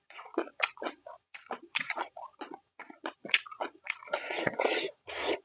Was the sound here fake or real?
fake